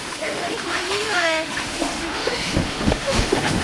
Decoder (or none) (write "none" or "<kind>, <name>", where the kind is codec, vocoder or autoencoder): autoencoder, DAC-VAE